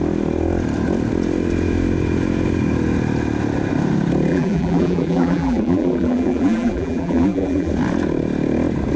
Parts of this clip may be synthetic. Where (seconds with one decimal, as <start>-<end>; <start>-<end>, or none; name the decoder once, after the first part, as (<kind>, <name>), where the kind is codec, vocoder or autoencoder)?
4.3-7.7 (vocoder, BigVGAN v2)